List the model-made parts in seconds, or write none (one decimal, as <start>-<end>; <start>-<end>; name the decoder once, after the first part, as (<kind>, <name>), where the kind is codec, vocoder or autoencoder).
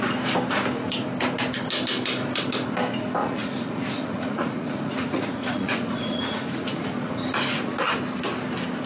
3.2-7.9 (vocoder, Vocos)